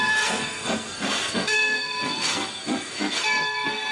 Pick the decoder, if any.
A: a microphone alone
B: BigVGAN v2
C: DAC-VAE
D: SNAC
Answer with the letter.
D